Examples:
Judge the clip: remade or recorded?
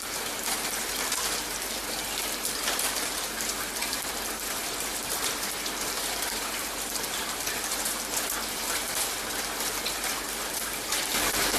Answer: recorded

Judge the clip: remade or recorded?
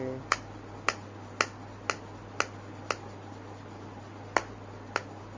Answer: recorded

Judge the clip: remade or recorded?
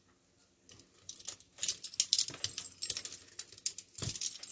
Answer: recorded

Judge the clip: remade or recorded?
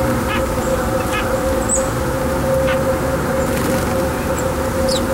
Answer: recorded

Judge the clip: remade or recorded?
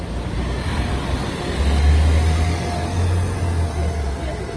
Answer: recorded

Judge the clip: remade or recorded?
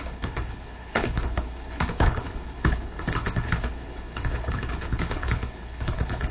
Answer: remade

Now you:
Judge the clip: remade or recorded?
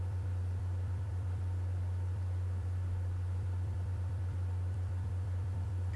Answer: remade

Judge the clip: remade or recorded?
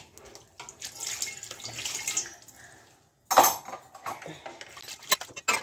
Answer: recorded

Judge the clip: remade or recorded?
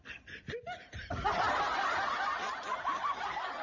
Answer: recorded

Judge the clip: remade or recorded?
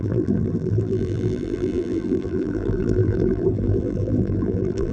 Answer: remade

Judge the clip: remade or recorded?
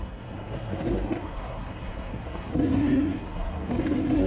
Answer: remade